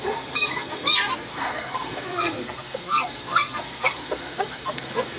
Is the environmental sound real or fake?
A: fake